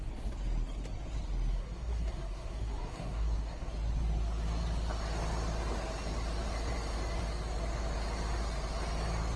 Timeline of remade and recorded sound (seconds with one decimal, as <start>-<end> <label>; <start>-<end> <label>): 0.0-1.5 recorded; 1.5-3.7 remade; 3.7-9.4 recorded